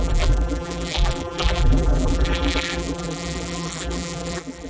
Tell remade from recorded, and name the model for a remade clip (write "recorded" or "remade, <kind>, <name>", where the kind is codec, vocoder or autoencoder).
remade, vocoder, BigVGAN v2